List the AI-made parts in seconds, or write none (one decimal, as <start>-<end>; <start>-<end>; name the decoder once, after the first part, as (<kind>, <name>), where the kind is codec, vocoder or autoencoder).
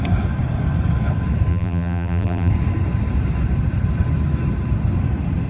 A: 1.5-2.5 (vocoder, BigVGAN v2)